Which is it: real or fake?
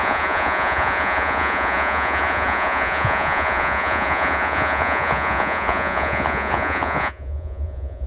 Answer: fake